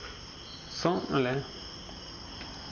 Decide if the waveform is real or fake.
real